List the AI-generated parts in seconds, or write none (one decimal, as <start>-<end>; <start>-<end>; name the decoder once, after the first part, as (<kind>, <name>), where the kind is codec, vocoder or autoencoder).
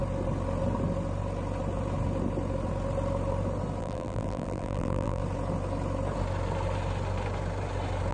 3.8-5.2 (vocoder, BigVGAN v2)